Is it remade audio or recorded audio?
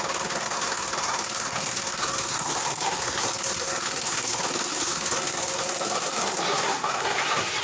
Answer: remade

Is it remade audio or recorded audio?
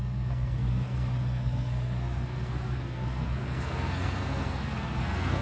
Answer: remade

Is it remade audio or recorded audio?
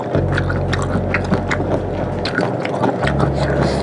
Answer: recorded